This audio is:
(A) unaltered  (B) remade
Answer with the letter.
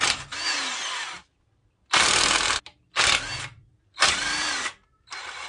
A